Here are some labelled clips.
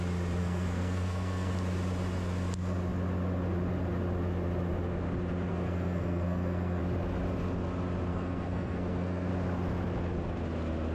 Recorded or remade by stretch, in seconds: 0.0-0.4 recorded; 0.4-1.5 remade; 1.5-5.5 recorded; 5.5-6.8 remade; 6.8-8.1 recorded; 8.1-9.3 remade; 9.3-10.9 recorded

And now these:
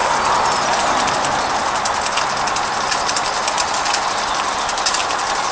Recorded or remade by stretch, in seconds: 0.0-5.5 recorded

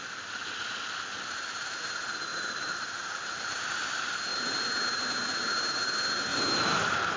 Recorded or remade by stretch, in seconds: 0.0-2.3 recorded; 2.3-3.3 remade; 3.3-6.3 recorded; 6.3-7.2 remade

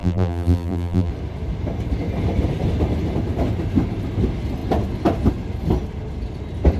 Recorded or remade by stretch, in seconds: 0.0-1.1 remade; 1.1-6.8 recorded

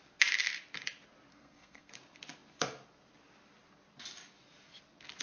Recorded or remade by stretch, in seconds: 0.0-1.3 recorded; 1.3-1.9 remade; 1.9-5.2 recorded

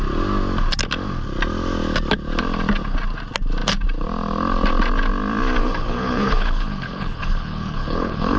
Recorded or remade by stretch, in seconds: 0.0-5.6 recorded; 5.6-8.4 remade

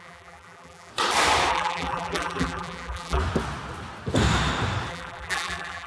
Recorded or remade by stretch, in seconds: 0.0-0.9 remade; 0.9-1.5 recorded; 1.5-3.2 remade; 3.2-4.9 recorded; 4.9-5.9 remade